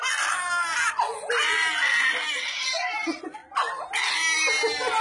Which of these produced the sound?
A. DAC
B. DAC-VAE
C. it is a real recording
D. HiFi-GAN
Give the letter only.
C